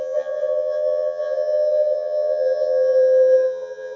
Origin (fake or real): fake